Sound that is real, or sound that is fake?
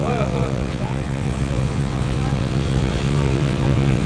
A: fake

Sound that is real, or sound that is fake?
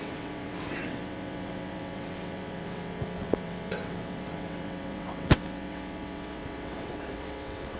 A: fake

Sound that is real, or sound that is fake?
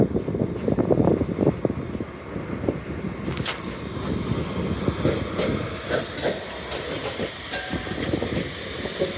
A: real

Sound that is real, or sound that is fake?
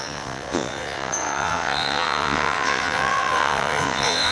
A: fake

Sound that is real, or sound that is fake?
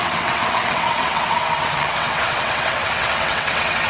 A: fake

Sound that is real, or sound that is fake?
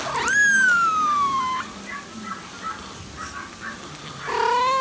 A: real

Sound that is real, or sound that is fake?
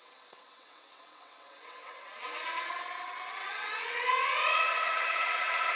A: fake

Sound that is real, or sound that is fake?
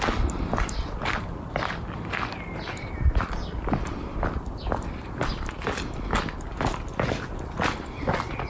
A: real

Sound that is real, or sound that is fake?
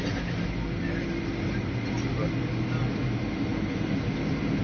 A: real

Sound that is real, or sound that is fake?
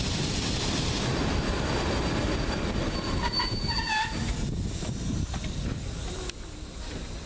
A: real